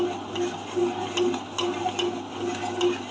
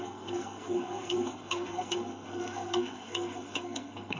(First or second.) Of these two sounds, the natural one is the first